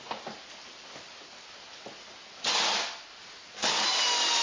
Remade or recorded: recorded